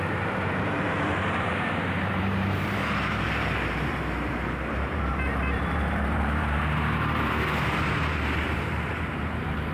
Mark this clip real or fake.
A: fake